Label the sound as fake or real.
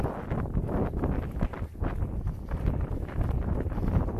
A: real